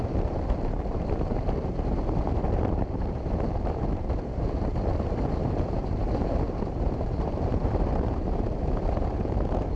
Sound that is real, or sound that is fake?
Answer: fake